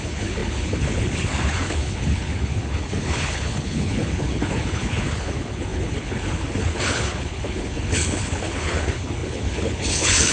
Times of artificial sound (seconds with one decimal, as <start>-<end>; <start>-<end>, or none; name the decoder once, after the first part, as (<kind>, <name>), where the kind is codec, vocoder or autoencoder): 0.0-10.3 (codec, HILCodec)